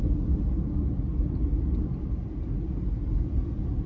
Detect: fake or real real